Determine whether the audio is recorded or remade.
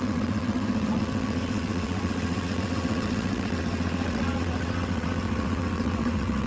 remade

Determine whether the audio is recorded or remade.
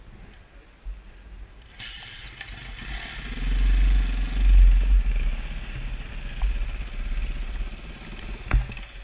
recorded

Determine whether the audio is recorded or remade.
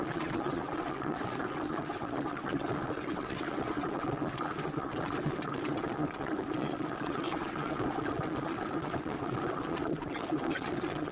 remade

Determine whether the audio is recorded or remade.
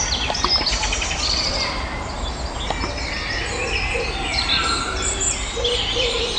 recorded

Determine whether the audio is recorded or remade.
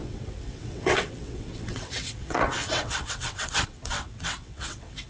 remade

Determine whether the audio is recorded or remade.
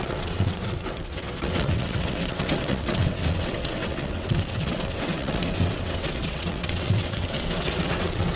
remade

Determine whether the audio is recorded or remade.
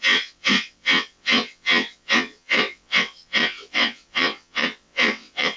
remade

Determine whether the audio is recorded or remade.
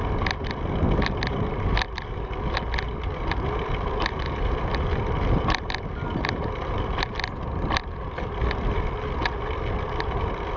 recorded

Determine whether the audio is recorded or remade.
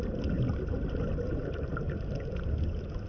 recorded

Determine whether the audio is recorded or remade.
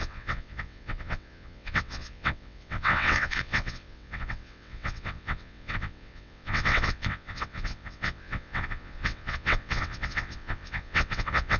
remade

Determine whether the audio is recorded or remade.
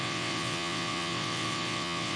remade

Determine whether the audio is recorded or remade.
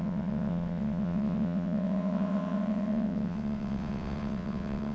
remade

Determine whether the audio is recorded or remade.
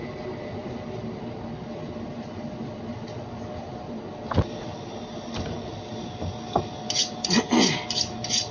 recorded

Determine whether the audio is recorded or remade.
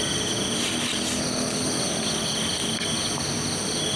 recorded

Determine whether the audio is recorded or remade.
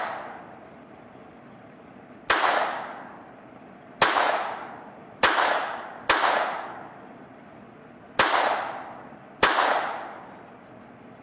recorded